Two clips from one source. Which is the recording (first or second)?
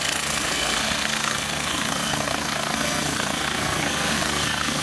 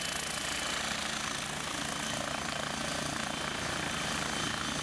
second